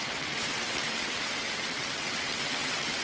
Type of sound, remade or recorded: remade